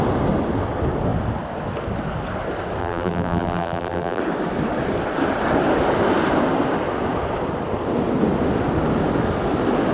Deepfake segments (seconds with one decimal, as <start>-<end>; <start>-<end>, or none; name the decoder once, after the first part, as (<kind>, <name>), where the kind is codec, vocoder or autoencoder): 2.8-4.2 (vocoder, BigVGAN v2)